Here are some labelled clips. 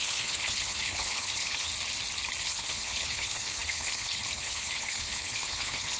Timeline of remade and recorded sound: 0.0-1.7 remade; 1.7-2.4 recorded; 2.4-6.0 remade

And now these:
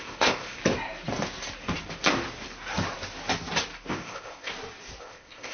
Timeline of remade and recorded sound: 0.0-0.6 remade; 0.6-3.9 recorded; 3.9-4.5 remade; 4.5-5.0 recorded; 5.0-5.5 remade

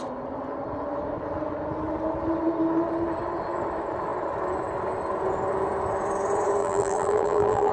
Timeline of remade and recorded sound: 0.0-6.6 recorded; 6.6-7.7 remade

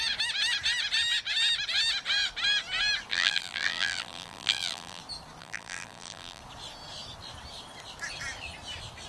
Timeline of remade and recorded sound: 0.0-3.1 recorded; 3.1-5.0 remade; 5.0-5.4 recorded; 5.4-6.4 remade; 6.4-9.1 recorded

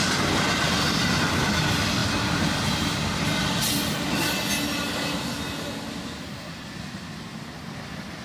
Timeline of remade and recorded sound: 0.0-8.2 recorded